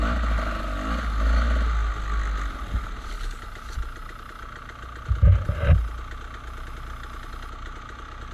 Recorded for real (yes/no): yes